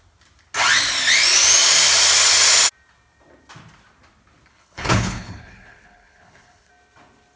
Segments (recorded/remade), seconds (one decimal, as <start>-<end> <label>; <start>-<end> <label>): 0.0-4.5 recorded; 4.5-6.7 remade; 6.7-7.4 recorded